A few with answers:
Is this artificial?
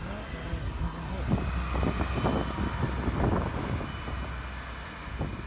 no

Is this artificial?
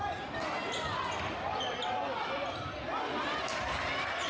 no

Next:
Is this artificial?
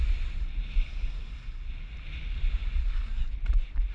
no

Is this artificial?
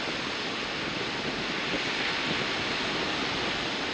no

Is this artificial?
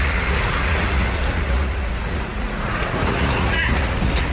yes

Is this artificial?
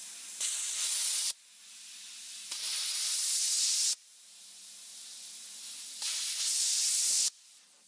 no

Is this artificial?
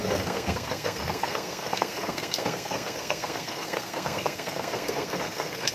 yes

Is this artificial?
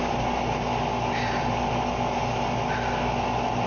no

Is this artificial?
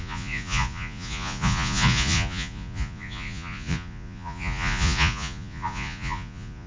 yes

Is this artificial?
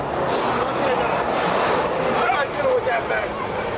no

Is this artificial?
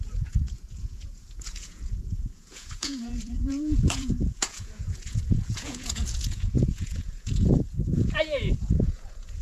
yes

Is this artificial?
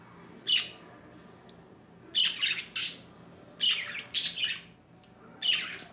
no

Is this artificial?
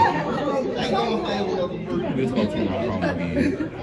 yes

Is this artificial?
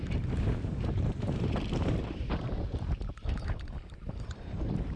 yes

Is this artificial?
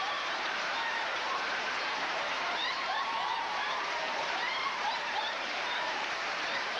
yes